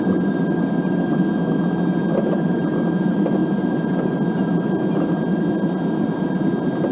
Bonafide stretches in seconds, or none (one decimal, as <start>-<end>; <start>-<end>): 0.0-6.9